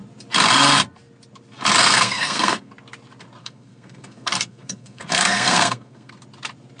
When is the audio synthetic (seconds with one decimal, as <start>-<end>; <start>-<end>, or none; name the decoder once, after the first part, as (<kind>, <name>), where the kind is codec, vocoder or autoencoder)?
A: 1.8-2.7 (codec, SNAC); 3.4-6.1